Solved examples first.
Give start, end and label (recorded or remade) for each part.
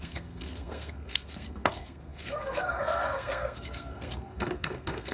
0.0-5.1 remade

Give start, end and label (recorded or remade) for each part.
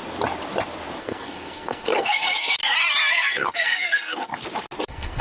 0.0-1.0 recorded; 1.0-2.6 remade; 2.6-3.1 recorded; 3.1-4.3 remade; 4.3-4.8 recorded; 4.8-5.2 remade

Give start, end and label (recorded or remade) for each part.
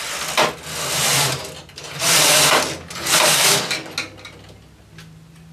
0.0-3.3 recorded; 3.3-3.9 remade; 3.9-5.5 recorded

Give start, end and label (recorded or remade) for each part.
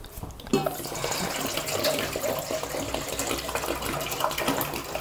0.0-5.0 recorded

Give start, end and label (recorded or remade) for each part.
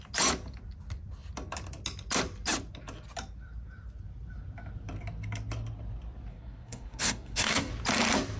0.0-6.3 recorded; 6.3-7.7 remade; 7.7-8.4 recorded